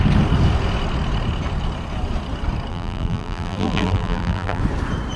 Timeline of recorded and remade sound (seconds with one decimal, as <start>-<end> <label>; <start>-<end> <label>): 0.0-2.7 recorded; 2.7-4.6 remade; 4.6-5.2 recorded